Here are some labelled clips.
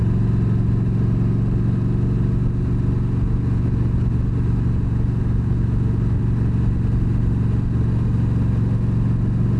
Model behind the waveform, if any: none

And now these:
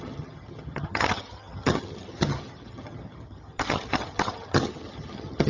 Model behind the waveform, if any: vocoder, HiFi-GAN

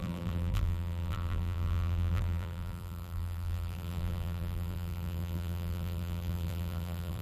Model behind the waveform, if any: vocoder, BigVGAN v2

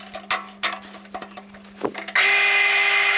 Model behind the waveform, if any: none